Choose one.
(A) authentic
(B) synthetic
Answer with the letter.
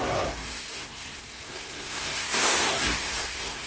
B